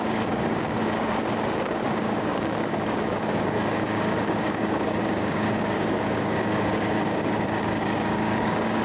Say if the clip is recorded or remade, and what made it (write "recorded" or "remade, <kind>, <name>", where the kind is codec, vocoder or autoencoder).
remade, codec, DAC